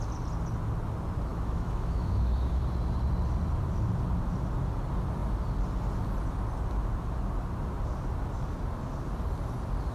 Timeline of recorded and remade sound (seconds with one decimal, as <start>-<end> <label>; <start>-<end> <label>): 0.0-1.3 recorded; 1.3-2.6 remade; 2.6-9.9 recorded